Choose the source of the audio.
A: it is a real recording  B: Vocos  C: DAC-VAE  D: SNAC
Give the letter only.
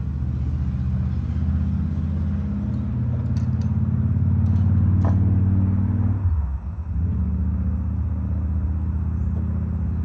A